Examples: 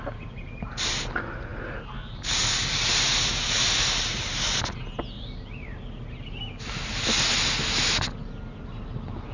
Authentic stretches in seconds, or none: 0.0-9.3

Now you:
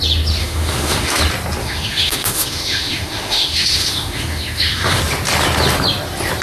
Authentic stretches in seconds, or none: 0.0-0.4; 1.2-1.6; 5.0-6.4

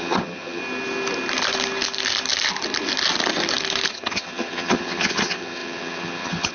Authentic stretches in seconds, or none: 0.6-3.9

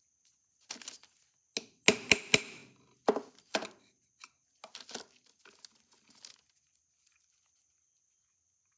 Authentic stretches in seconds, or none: 0.0-8.8

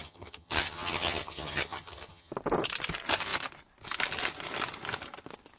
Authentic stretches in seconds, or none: 2.3-5.6

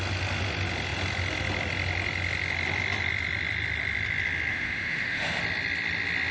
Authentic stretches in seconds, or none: 0.0-4.5; 5.4-6.3

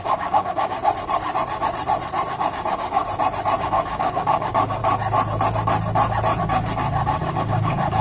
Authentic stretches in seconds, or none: 0.8-2.3; 3.0-3.6; 4.8-6.4

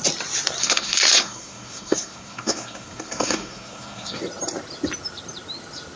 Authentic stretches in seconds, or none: 0.0-0.6; 4.2-6.0